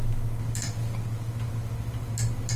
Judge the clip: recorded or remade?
recorded